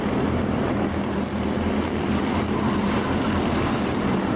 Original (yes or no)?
yes